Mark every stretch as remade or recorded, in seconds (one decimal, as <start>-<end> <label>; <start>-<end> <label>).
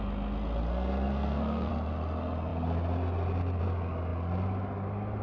0.0-0.7 recorded; 0.7-1.7 remade; 1.7-5.2 recorded